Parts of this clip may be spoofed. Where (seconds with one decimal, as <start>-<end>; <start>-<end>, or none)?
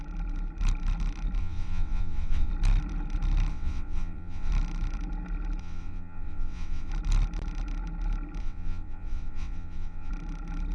1.4-2.5; 3.5-4.5; 5.6-6.9; 8.4-10.1